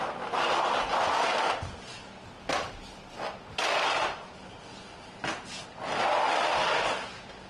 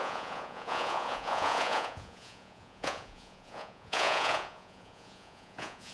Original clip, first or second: first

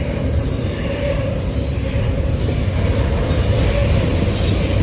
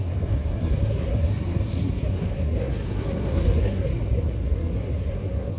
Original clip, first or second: first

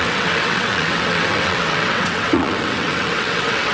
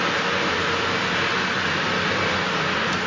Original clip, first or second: second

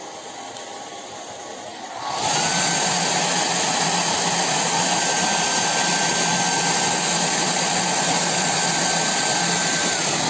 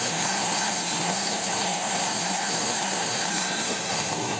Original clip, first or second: first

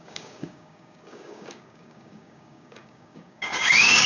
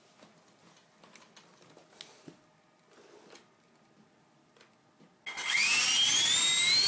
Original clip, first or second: second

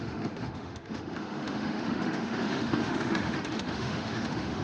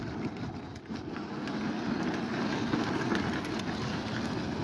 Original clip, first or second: second